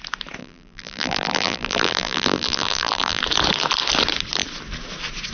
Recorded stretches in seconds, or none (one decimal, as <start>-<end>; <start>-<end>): 0.0-0.4; 3.2-5.3